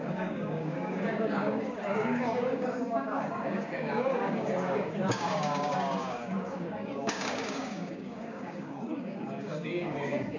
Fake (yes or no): yes